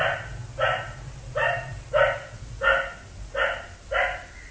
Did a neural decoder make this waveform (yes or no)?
no